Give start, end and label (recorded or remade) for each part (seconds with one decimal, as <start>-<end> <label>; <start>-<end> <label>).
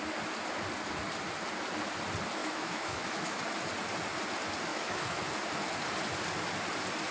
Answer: 0.0-2.4 recorded; 2.4-3.4 remade; 3.4-4.7 recorded; 4.7-5.2 remade; 5.2-7.1 recorded